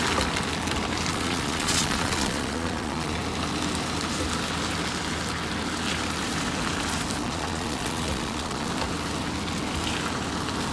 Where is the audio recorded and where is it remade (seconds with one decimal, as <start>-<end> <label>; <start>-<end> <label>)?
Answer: 0.0-1.1 recorded; 1.1-3.2 remade; 3.2-7.2 recorded; 7.2-8.7 remade; 8.7-10.7 recorded